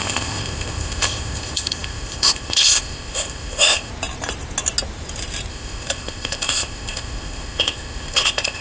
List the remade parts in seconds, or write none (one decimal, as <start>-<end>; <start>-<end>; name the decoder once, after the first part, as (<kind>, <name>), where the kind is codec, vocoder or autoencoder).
0.0-3.9 (codec, ZipCodec); 5.5-8.6